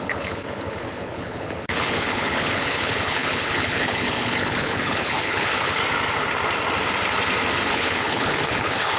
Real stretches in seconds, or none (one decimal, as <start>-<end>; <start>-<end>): 5.8-7.7